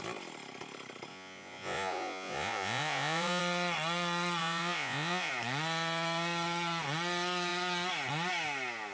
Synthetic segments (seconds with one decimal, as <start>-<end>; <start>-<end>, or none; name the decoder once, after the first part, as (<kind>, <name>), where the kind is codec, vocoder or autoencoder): 1.1-3.4 (vocoder, Vocos); 4.4-5.3